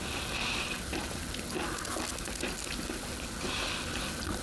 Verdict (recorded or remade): recorded